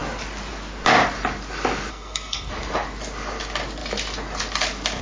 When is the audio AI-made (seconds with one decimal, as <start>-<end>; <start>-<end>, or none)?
1.9-2.5